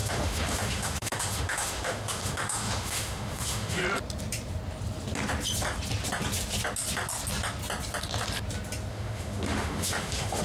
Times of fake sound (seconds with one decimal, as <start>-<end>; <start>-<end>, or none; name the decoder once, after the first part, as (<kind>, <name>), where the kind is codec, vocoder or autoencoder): 0.0-3.8 (autoencoder, DAC-VAE); 8.9-10.4